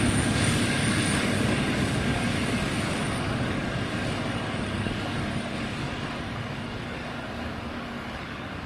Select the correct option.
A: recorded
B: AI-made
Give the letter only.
B